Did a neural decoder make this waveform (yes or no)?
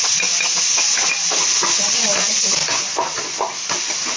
no